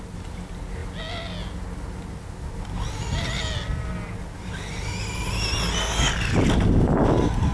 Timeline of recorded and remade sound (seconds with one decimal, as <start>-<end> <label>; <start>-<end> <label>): 0.0-7.5 recorded

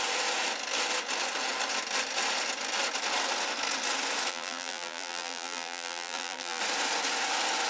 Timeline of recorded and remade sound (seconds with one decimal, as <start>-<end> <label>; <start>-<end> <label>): 0.0-4.3 recorded; 4.3-6.6 remade; 6.6-7.7 recorded

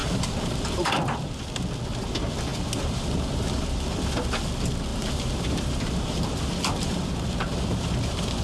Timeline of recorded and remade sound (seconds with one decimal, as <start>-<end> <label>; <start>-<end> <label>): 0.0-1.3 remade; 1.3-2.5 recorded; 2.5-3.9 remade; 3.9-4.9 recorded; 4.9-8.4 remade

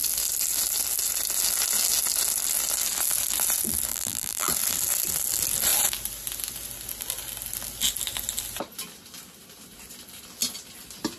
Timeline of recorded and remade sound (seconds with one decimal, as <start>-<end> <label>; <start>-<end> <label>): 0.0-3.9 recorded; 3.9-4.5 remade; 4.5-11.2 recorded

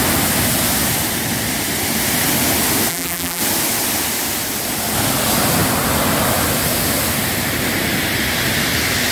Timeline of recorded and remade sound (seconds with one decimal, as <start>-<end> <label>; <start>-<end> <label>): 0.0-2.9 recorded; 2.9-3.4 remade; 3.4-9.1 recorded